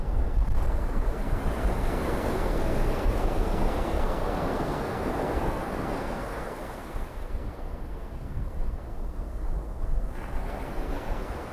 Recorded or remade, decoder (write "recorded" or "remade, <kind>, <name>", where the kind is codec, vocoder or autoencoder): remade, codec, SNAC